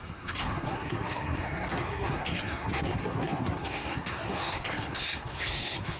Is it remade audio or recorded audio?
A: remade